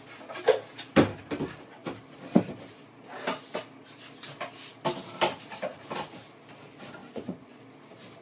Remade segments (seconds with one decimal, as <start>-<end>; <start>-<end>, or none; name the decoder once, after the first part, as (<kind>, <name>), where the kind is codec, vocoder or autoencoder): 7.0-7.6 (vocoder, Vocos)